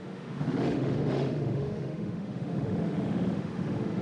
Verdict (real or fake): fake